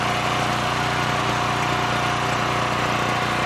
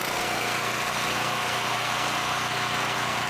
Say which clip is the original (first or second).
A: first